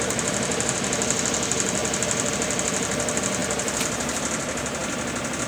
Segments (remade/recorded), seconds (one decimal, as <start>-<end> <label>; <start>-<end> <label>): 0.0-1.8 remade; 1.8-2.3 recorded; 2.3-4.8 remade; 4.8-5.5 recorded